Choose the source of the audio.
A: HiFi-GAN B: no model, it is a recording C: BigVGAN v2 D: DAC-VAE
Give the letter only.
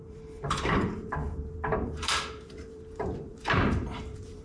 C